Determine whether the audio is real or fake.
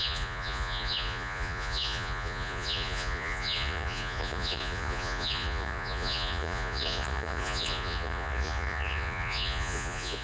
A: fake